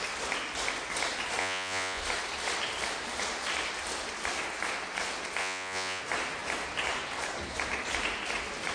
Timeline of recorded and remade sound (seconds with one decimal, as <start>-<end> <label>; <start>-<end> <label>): 0.0-1.4 recorded; 1.4-2.0 remade; 2.0-5.4 recorded; 5.4-6.0 remade; 6.0-8.7 recorded